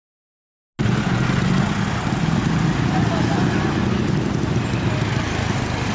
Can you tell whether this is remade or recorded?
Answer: recorded